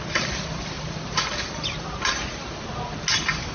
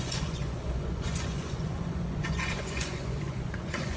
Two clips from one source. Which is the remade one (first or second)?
second